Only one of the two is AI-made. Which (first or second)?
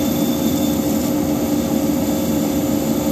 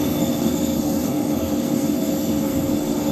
second